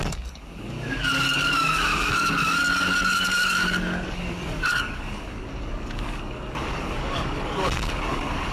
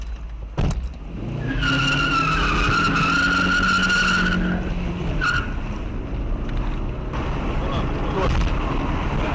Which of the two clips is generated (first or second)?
first